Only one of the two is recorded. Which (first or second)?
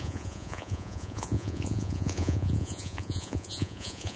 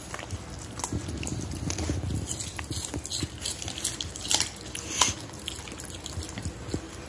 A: second